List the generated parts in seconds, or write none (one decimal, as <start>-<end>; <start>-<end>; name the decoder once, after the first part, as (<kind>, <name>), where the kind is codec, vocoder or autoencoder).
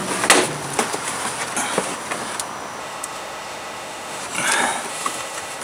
2.8-4.2 (autoencoder, DAC-VAE); 4.9-5.6